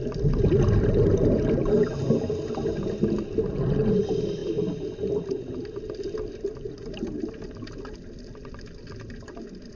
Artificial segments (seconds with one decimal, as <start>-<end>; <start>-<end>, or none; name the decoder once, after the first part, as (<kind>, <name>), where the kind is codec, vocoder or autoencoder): none